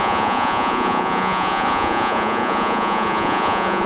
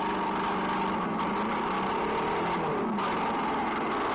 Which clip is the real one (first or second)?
second